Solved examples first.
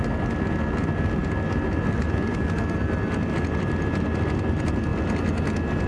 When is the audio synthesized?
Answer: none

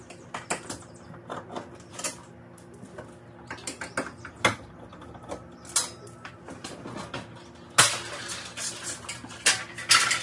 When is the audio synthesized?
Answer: none

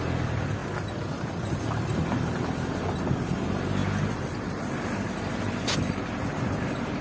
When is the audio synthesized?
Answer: none

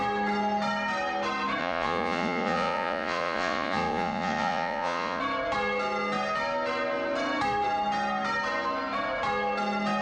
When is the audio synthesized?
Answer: 1.6-5.2 (vocoder, Vocos)

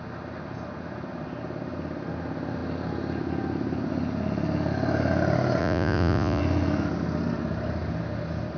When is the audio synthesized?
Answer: 5.6-6.4 (vocoder, Vocos)

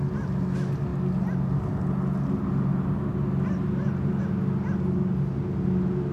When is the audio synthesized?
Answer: none